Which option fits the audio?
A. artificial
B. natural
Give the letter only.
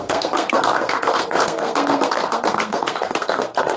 A